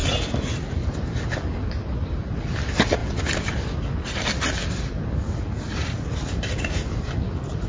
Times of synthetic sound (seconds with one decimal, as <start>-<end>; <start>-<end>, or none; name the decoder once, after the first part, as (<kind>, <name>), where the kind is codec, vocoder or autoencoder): none